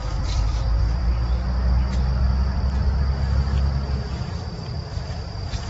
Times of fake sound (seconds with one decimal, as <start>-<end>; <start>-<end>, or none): 0.0-1.1; 2.1-3.0

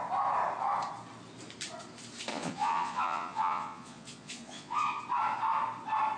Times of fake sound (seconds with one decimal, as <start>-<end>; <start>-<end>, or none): 2.3-5.0

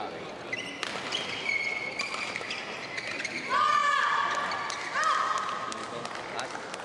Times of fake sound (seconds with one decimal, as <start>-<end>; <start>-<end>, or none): none

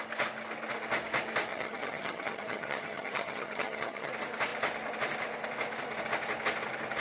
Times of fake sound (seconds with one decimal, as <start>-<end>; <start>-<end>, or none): 1.5-4.1

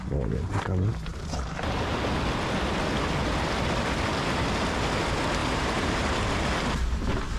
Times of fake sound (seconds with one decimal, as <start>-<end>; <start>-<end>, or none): 5.4-5.9

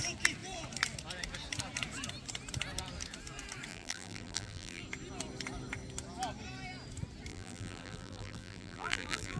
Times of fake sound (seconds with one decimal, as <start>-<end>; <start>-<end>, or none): 3.7-4.8; 7.3-9.4

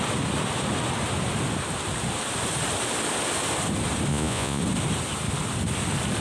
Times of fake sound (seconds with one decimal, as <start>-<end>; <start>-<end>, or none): 4.1-4.6